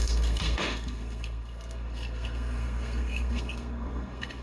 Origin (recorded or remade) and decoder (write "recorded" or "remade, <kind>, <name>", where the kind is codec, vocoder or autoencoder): remade, codec, SNAC